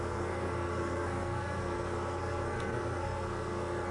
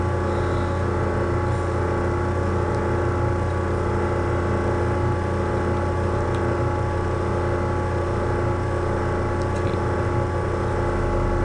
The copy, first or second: first